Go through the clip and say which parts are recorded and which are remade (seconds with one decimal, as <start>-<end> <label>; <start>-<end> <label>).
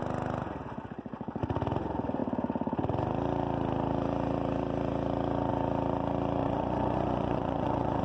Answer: 0.0-6.4 recorded; 6.4-8.0 remade